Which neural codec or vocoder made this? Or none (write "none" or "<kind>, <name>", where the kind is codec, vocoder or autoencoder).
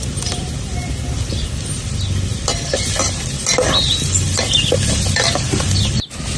none